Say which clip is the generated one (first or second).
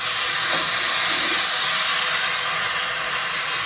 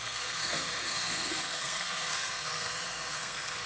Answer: second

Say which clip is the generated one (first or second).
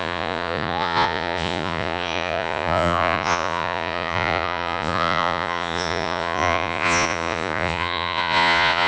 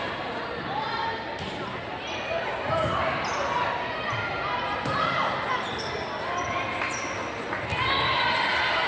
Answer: first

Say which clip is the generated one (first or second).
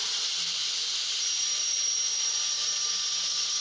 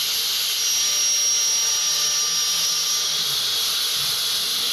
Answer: first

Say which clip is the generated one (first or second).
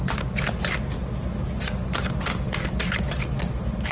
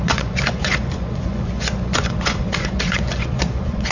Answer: second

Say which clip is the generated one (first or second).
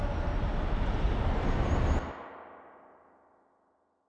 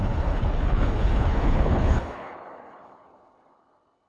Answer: second